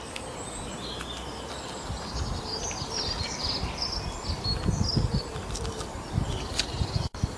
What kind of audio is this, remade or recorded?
recorded